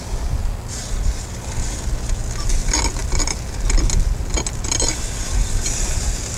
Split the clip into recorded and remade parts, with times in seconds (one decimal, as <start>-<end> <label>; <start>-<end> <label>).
0.0-6.4 recorded